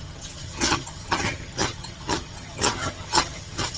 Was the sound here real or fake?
fake